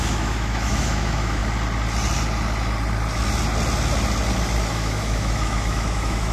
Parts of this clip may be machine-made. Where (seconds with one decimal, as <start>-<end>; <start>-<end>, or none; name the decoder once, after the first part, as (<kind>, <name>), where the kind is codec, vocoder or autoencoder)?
0.0-1.4 (autoencoder, DAC-VAE); 4.7-6.3

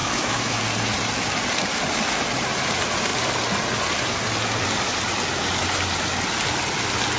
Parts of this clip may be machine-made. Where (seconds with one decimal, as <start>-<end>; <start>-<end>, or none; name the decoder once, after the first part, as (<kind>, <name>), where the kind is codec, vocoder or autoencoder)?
0.0-0.6 (autoencoder, DAC-VAE)

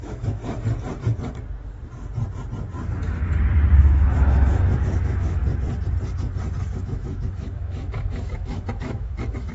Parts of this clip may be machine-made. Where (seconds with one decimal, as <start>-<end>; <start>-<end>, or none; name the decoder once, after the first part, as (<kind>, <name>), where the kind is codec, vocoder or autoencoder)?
0.0-0.4 (autoencoder, DAC-VAE); 3.7-5.4; 6.8-9.5